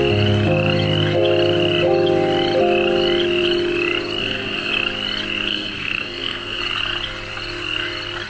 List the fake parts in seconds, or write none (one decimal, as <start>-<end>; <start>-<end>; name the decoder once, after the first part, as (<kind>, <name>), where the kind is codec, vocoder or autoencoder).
4.2-4.7 (codec, SNAC); 5.5-6.6